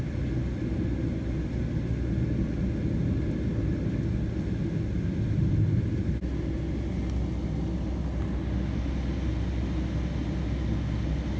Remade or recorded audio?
recorded